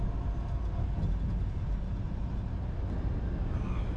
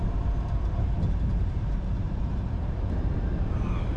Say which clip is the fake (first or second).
second